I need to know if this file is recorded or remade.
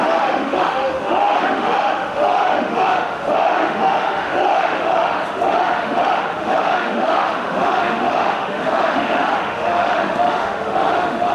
remade